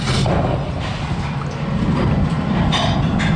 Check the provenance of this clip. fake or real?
real